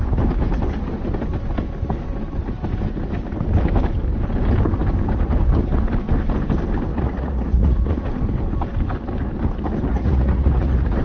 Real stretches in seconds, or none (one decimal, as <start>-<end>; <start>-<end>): 0.0-6.9; 8.1-9.9